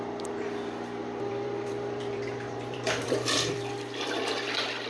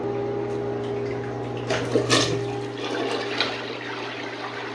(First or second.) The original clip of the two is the second